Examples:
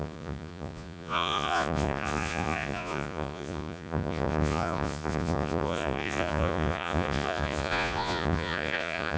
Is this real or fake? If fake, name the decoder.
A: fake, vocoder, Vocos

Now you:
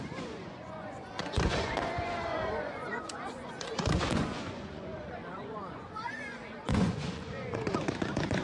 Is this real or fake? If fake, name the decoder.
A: fake, vocoder, Vocos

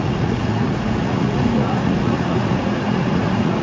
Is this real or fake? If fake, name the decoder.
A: fake, vocoder, Vocos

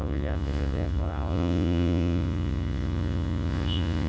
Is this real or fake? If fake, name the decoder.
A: fake, vocoder, Vocos